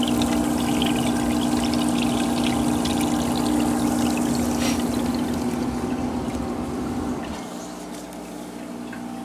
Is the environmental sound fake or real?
real